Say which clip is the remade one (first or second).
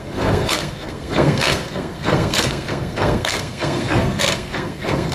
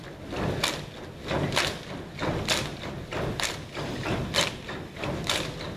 first